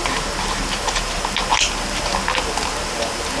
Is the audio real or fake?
real